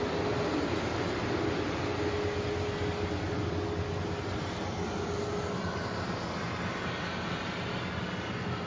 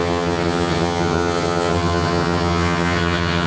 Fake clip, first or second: second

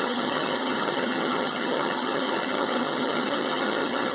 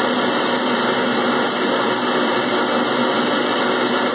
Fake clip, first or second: first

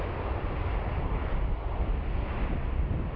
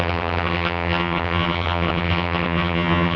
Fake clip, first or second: second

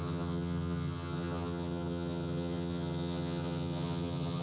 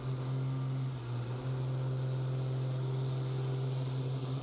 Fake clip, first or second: first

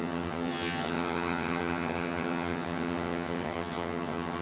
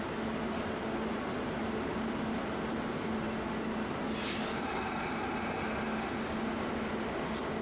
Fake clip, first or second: first